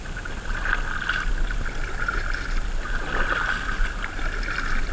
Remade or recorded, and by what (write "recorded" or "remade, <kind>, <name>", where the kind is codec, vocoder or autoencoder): recorded